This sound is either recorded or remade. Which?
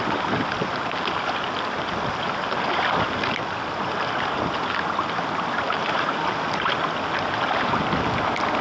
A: recorded